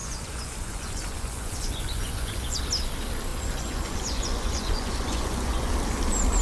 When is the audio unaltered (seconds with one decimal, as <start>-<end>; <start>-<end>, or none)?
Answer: 2.6-3.3; 5.7-6.4